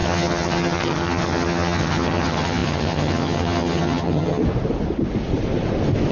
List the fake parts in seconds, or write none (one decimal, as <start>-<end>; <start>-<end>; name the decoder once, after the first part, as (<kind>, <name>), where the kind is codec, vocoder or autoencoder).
0.0-4.4 (vocoder, HiFi-GAN)